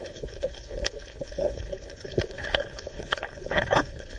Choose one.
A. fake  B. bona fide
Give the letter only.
A